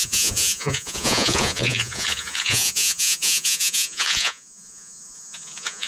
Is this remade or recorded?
remade